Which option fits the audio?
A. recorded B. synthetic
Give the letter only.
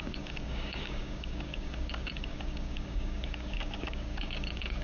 B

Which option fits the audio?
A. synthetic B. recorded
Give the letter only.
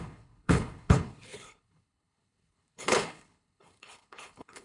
A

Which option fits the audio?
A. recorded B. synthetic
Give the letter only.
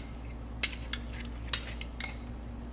A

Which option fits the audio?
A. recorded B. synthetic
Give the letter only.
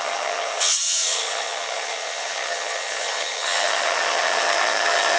B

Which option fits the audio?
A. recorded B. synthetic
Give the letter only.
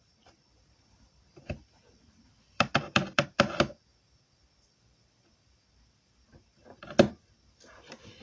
B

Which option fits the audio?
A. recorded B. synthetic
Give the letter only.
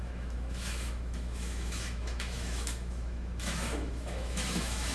B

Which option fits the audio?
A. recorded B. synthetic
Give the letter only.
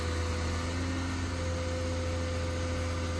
A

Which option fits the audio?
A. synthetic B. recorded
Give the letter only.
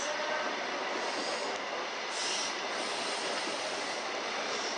B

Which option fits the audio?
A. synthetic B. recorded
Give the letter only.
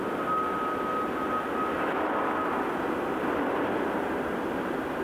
B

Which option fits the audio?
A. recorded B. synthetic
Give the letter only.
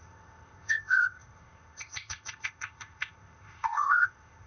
B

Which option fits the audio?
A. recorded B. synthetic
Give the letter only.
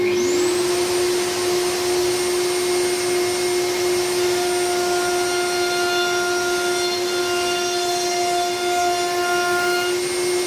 A